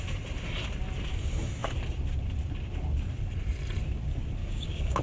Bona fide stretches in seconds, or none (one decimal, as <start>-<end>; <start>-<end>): 0.0-4.4